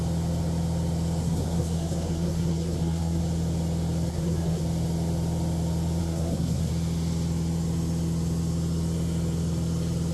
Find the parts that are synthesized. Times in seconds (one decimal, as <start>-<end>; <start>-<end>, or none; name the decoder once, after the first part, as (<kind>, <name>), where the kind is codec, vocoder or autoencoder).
1.2-3.2 (codec, SNAC); 4.1-4.6; 6.0-6.7